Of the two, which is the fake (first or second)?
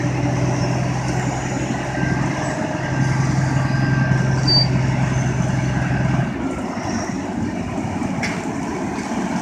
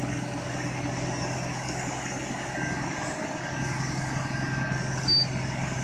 second